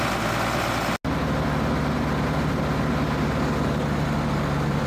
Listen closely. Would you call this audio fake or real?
real